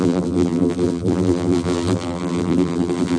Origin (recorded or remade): remade